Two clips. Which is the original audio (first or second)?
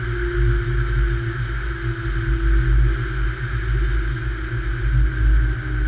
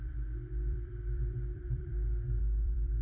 first